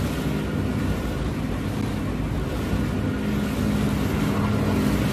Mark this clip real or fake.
real